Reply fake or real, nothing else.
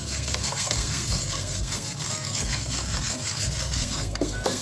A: fake